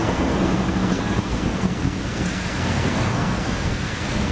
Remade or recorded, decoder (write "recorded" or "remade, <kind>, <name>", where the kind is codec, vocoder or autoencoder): remade, codec, SNAC